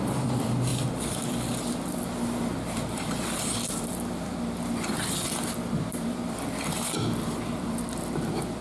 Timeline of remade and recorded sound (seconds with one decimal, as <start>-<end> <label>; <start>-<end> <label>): 0.0-8.6 remade